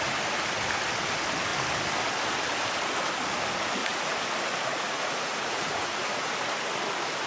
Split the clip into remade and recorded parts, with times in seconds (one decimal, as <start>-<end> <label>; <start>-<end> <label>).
0.0-3.8 recorded; 3.8-4.3 remade; 4.3-4.7 recorded; 4.7-6.2 remade; 6.2-7.3 recorded